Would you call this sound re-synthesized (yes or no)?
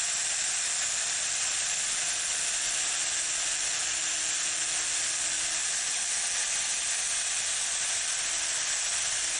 no